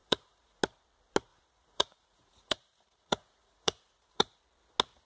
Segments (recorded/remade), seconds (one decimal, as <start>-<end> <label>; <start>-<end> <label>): 0.0-0.6 remade; 0.6-1.3 recorded; 1.3-4.4 remade; 4.4-5.1 recorded